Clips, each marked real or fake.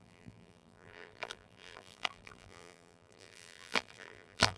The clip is fake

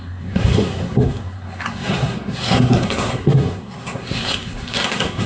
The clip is fake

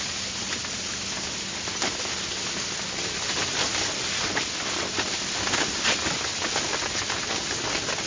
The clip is real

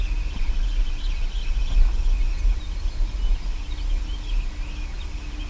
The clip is real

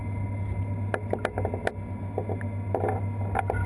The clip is real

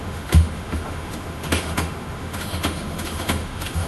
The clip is fake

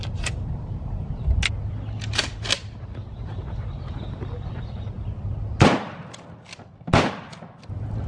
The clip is real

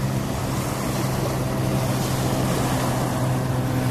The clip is real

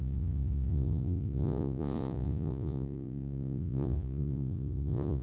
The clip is fake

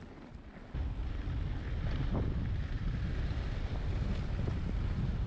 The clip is real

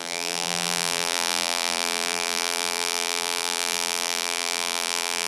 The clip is fake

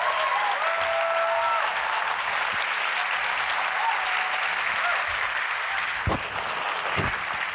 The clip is real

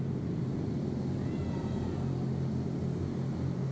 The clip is real